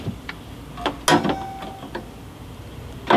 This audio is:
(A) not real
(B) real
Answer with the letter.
B